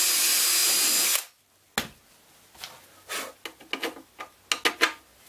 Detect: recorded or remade recorded